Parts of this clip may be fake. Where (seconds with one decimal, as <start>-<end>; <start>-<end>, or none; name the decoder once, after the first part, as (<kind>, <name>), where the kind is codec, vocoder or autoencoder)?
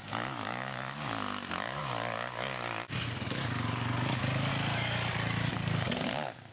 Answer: 0.0-1.8 (codec, DAC); 3.0-4.5; 5.5-6.5